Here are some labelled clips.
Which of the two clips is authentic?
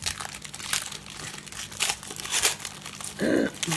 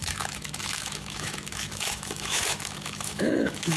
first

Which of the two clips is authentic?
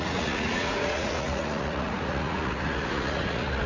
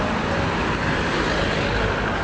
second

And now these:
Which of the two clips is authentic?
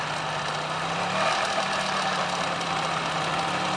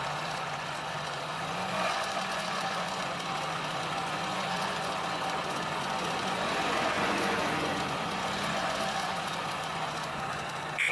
first